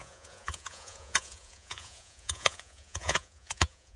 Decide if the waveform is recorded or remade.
remade